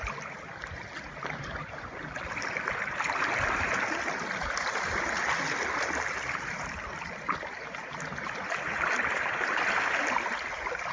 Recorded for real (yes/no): yes